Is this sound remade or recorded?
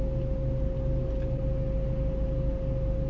recorded